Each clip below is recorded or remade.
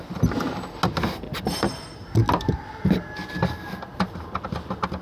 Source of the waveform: recorded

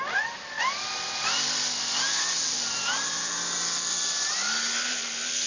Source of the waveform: recorded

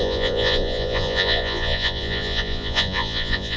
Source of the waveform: remade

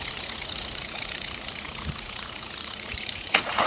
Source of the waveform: remade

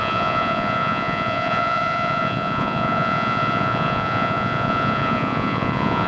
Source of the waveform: remade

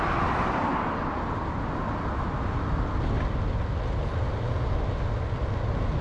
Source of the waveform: recorded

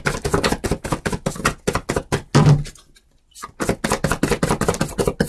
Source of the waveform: recorded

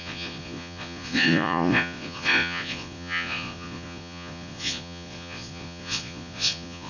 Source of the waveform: remade